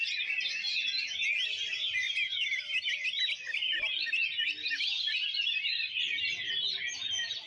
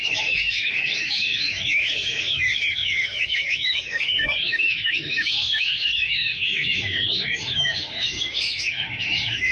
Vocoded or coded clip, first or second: second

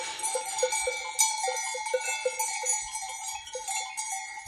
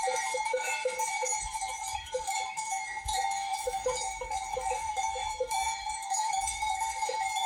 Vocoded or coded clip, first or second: second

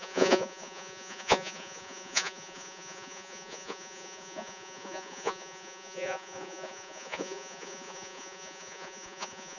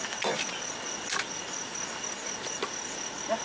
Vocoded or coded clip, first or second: first